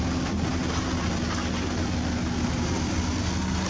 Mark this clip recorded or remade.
recorded